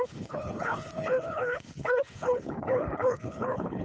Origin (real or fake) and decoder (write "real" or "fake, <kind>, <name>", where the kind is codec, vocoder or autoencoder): fake, codec, HILCodec